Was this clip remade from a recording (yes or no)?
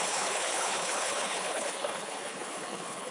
yes